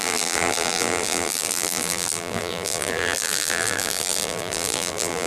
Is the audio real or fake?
fake